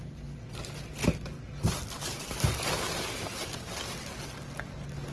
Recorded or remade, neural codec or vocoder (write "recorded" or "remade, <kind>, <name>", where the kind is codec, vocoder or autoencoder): recorded